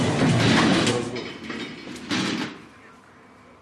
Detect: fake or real real